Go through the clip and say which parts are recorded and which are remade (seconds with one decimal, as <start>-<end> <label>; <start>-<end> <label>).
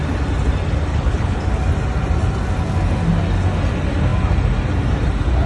0.0-0.9 recorded; 0.9-1.4 remade; 1.4-5.5 recorded